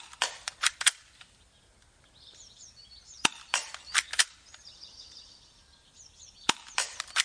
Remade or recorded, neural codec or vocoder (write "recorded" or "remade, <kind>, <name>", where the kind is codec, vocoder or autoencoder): remade, vocoder, BigVGAN v2